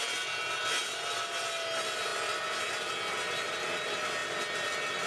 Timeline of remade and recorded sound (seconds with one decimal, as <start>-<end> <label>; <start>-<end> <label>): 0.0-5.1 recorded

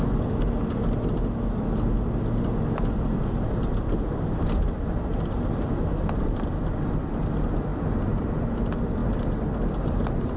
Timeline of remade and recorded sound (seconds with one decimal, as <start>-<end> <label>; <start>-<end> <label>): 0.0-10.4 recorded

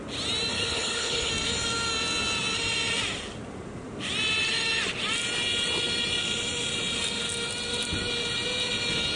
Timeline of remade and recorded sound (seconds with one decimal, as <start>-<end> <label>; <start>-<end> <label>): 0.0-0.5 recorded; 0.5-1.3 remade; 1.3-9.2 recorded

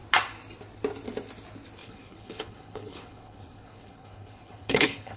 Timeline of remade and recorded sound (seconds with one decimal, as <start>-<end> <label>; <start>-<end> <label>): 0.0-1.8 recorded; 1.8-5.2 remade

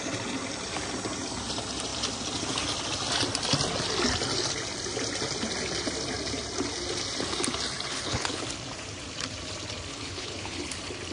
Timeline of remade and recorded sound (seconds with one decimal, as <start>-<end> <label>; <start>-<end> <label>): 0.0-7.9 recorded; 7.9-8.4 remade; 8.4-9.9 recorded; 9.9-10.7 remade; 10.7-11.1 recorded

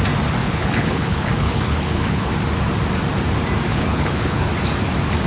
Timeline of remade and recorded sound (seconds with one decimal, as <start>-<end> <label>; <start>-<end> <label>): 0.0-0.4 recorded; 0.4-2.3 remade; 2.3-3.7 recorded; 3.7-4.5 remade; 4.5-5.3 recorded